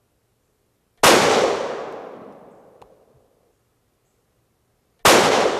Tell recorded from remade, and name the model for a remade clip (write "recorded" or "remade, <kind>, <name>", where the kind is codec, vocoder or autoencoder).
recorded